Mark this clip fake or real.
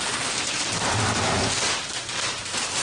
real